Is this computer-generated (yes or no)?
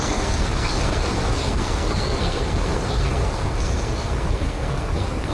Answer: yes